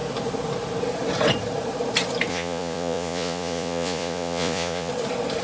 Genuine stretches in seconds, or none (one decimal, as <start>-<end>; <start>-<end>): 0.0-2.3; 4.9-5.4